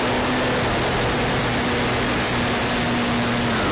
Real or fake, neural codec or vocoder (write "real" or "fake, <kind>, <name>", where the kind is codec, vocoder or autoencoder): real